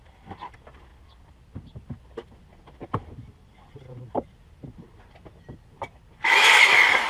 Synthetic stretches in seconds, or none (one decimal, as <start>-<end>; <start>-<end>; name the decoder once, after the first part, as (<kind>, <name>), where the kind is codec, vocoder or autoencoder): none